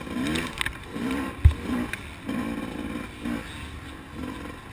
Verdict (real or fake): real